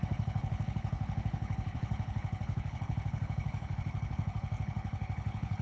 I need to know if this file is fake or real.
fake